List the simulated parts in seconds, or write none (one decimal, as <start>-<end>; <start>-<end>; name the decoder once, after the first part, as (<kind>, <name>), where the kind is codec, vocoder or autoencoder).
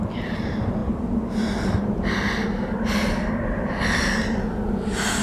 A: none